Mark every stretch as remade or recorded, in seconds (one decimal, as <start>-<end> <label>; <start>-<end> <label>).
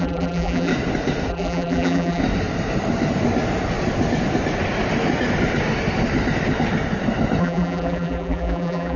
0.0-0.7 remade; 0.7-1.3 recorded; 1.3-2.2 remade; 2.2-7.4 recorded; 7.4-9.0 remade